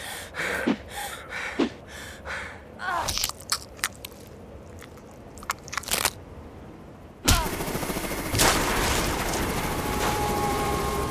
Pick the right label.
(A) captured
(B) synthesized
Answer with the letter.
B